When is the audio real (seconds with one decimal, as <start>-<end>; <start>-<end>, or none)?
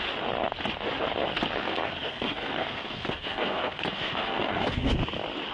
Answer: 0.0-1.6; 4.9-5.5